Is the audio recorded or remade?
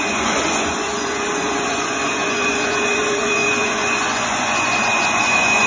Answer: remade